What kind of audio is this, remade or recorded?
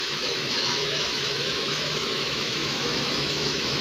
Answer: remade